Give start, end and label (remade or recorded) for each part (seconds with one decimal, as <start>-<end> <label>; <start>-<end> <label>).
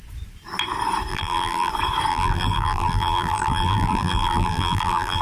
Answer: 0.0-1.1 recorded; 1.1-1.7 remade; 1.7-2.1 recorded; 2.1-5.2 remade